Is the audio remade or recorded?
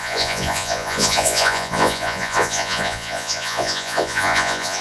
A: remade